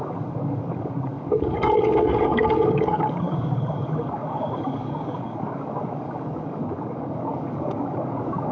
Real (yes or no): no